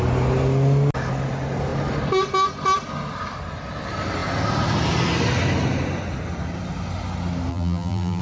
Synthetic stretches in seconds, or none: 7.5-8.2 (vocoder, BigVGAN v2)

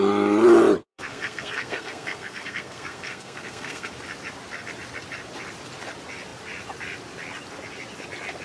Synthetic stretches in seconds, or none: 0.8-3.9 (codec, SNAC)

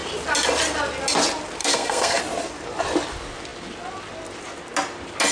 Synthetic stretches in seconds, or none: 1.6-2.2 (codec, SNAC)

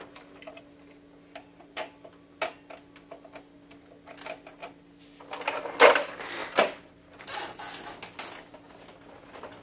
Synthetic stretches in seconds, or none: none

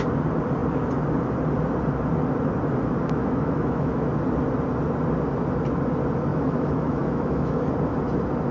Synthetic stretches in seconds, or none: 3.2-4.1 (autoencoder, DAC-VAE); 6.3-7.6

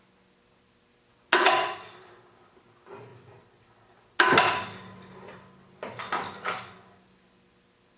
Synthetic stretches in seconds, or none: none

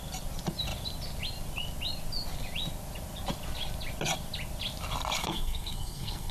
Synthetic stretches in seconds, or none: 5.2-6.3 (codec, SNAC)

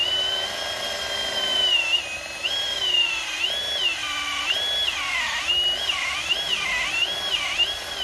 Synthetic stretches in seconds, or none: none